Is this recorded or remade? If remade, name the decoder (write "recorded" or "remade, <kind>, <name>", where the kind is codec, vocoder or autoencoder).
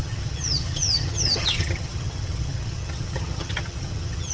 remade, vocoder, HiFi-GAN